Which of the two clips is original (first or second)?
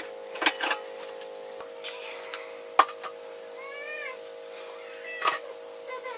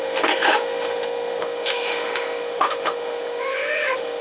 first